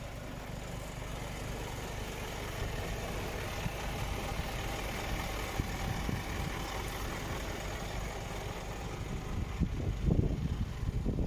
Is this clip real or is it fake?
real